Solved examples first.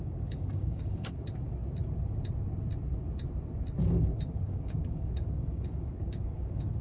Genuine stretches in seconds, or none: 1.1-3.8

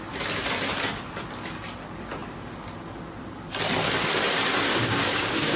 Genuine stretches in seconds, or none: 0.0-4.8

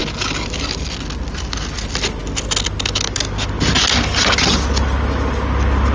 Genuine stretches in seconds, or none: 0.0-5.9

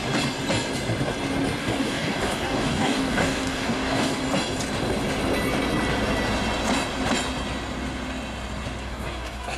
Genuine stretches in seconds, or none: 0.0-1.6; 4.2-8.8

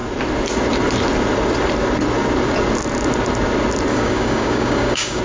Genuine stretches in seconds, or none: 0.0-3.9